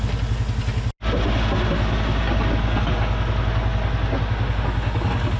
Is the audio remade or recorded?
recorded